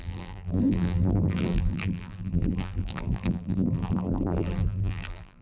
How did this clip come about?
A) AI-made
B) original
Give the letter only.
A